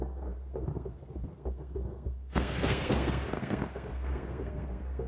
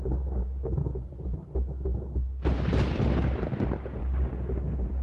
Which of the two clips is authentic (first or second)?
second